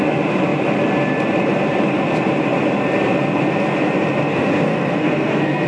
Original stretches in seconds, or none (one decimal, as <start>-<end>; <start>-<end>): 0.0-4.3